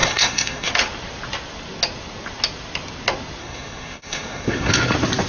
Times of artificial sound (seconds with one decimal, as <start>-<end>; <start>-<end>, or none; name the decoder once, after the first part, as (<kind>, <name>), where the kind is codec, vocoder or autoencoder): 0.0-0.7 (codec, SNAC); 3.4-4.7